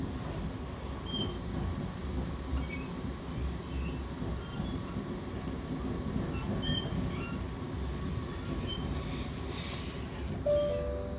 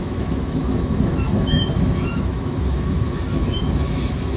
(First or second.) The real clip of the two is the first